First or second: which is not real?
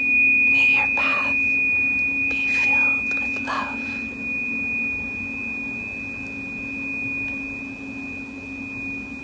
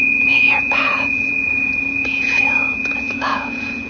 second